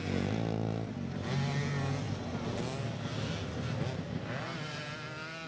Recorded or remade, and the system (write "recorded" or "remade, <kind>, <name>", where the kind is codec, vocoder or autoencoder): recorded